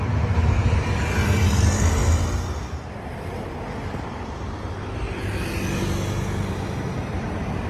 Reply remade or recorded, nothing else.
recorded